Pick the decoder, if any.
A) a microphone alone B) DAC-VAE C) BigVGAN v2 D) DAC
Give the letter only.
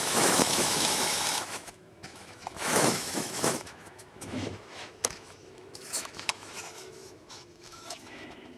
B